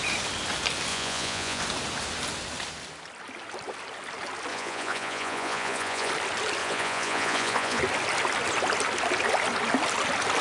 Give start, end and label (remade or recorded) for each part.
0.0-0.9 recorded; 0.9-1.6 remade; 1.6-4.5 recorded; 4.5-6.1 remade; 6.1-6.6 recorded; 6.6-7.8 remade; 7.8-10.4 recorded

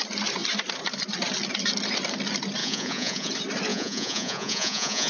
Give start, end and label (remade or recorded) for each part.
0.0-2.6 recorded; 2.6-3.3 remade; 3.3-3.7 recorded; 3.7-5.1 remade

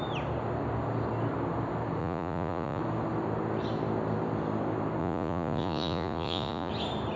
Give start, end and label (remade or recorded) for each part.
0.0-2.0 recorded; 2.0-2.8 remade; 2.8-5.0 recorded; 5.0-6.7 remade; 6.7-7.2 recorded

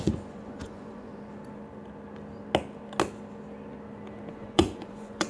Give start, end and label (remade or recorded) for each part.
0.0-1.1 remade; 1.1-4.3 recorded; 4.3-5.3 remade

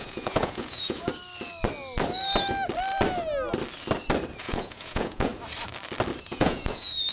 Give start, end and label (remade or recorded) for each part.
0.0-1.1 remade; 1.1-4.4 recorded; 4.4-5.3 remade; 5.3-6.2 recorded; 6.2-7.1 remade

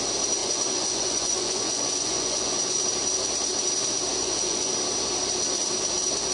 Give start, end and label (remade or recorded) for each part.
0.0-0.4 recorded; 0.4-2.8 remade; 2.8-4.1 recorded; 4.1-4.7 remade; 4.7-6.3 recorded

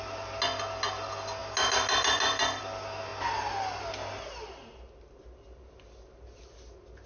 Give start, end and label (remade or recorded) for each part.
0.0-7.1 recorded

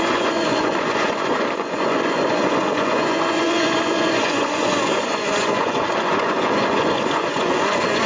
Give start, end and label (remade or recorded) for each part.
0.0-8.1 remade